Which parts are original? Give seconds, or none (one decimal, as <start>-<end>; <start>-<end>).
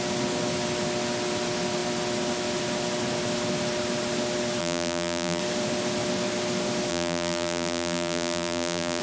0.0-4.6; 5.4-6.9